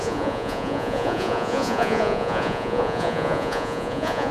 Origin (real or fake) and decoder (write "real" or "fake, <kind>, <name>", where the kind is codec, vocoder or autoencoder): fake, vocoder, Vocos